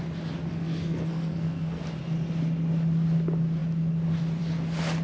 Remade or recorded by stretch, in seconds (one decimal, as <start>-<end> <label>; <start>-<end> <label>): 0.0-0.5 recorded; 0.5-1.8 remade; 1.8-5.0 recorded